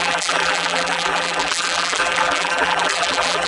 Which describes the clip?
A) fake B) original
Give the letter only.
A